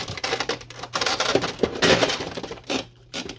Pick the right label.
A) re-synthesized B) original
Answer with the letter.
A